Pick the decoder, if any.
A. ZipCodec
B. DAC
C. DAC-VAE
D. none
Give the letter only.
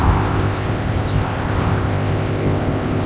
A